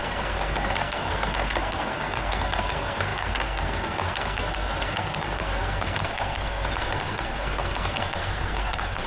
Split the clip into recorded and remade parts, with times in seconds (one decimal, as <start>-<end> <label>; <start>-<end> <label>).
0.0-9.1 remade